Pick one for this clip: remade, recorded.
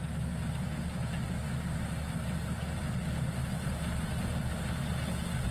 recorded